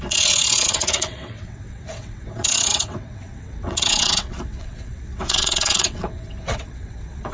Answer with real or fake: fake